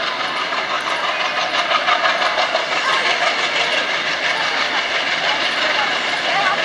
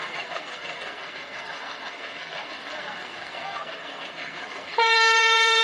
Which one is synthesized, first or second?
second